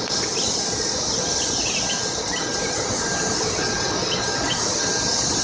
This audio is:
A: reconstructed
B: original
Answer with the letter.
B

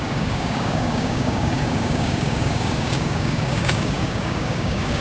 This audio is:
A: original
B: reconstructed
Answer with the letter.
B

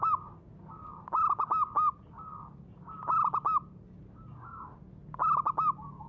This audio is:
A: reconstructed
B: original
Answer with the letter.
B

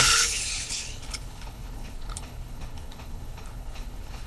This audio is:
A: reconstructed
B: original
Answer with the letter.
A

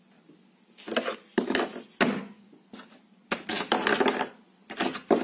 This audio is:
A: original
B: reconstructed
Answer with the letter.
A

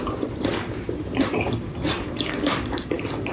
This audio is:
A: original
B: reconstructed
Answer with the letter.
B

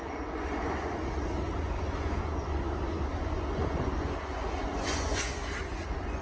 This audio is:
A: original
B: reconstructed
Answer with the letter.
B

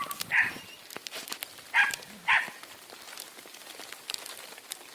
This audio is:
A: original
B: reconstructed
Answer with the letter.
A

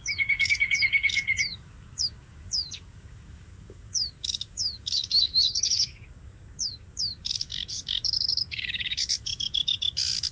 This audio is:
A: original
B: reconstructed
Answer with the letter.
B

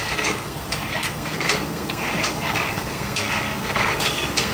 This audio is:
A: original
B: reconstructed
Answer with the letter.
B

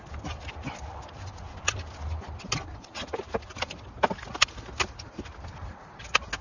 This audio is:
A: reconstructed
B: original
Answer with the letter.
B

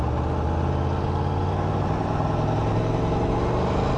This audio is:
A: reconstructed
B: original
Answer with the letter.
B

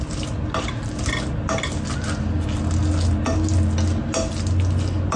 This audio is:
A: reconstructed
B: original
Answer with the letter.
B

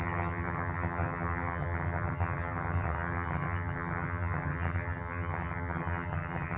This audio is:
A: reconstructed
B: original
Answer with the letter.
A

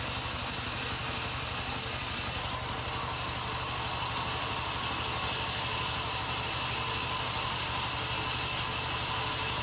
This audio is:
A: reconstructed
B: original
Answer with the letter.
B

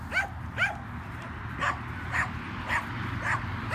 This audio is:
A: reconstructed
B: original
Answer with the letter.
B